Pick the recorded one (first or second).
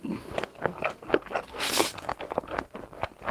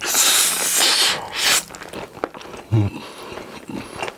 second